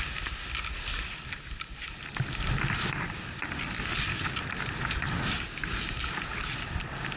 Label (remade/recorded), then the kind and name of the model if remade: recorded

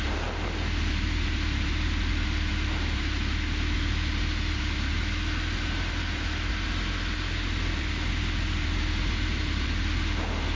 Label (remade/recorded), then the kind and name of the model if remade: recorded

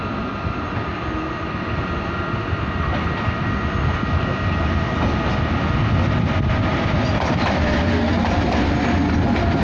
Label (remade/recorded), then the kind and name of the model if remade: recorded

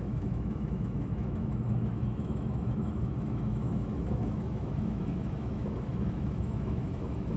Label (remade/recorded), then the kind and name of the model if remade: remade, autoencoder, DAC-VAE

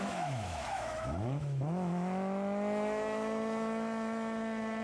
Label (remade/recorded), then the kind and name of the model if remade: remade, autoencoder, DAC-VAE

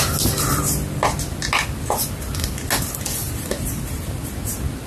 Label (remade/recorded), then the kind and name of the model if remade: recorded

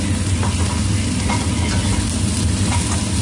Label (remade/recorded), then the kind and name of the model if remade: recorded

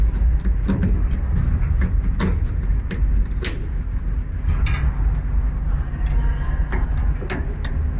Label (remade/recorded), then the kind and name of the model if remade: recorded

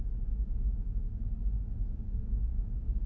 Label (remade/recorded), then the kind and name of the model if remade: remade, autoencoder, DAC-VAE